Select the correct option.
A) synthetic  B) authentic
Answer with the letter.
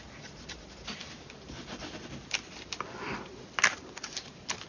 B